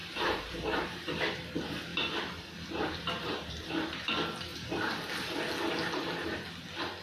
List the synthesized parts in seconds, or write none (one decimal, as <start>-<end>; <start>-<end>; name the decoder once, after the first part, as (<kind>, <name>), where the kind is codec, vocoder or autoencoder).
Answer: 0.0-1.2 (vocoder, BigVGAN v2); 1.9-4.1; 4.5-5.1